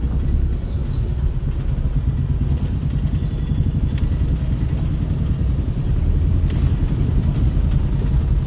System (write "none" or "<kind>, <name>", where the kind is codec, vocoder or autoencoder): none